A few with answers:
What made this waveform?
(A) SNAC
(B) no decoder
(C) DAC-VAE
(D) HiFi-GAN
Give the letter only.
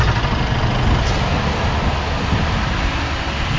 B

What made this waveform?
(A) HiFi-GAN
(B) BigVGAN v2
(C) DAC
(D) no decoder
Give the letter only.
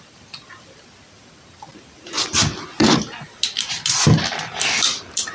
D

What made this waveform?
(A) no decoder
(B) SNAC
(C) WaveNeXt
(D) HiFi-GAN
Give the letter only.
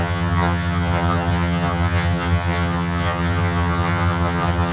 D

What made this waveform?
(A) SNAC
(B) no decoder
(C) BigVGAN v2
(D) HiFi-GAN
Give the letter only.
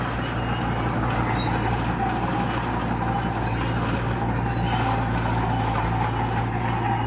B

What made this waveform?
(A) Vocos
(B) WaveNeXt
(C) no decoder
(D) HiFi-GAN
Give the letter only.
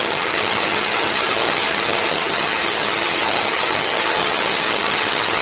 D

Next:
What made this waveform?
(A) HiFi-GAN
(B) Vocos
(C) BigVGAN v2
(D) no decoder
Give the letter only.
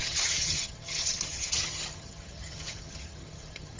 A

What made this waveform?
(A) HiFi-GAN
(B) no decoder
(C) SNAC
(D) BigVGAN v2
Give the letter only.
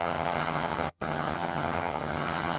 A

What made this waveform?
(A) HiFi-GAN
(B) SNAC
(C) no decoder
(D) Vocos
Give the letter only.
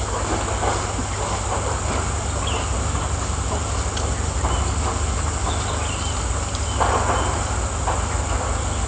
C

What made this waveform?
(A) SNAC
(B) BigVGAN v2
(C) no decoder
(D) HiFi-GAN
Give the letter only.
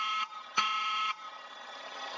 D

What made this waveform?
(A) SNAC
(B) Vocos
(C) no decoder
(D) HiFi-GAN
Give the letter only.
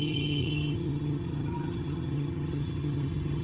D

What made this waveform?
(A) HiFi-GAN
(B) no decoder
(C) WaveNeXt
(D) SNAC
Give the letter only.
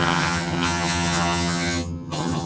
A